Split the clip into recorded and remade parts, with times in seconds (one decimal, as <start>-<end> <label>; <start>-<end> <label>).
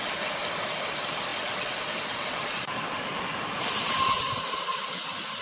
0.0-5.4 recorded